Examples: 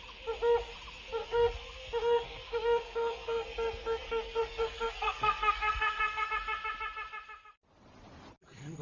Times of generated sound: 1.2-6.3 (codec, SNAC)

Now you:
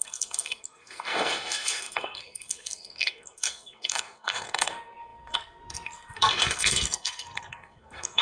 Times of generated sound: 0.0-8.2 (codec, SNAC)

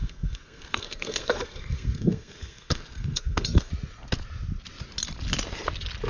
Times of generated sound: 0.0-3.7 (codec, SNAC)

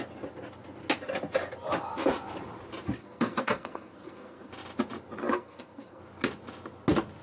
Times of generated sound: 3.0-4.5 (codec, SNAC); 5.2-6.0

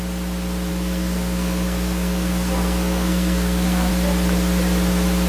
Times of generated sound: 0.7-3.9 (codec, SNAC)

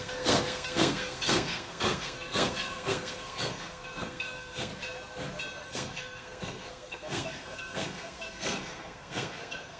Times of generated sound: 0.0-4.7 (codec, SNAC); 5.7-9.8

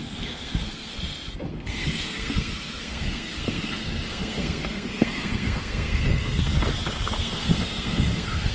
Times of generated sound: 0.0-6.5 (codec, SNAC); 7.2-8.5

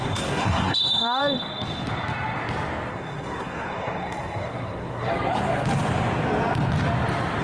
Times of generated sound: 0.0-1.2 (codec, SNAC); 2.9-5.1